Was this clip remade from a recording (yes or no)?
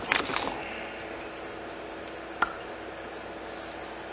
no